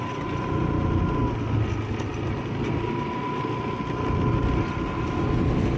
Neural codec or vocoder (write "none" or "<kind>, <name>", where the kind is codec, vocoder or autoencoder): none